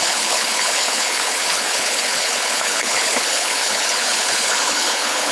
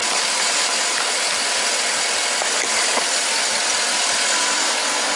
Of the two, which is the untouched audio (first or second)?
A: second